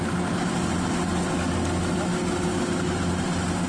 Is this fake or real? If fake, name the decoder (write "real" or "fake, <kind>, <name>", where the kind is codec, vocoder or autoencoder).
real